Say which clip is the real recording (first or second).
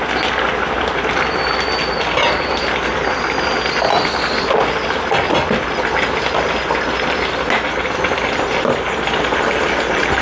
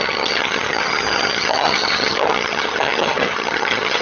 first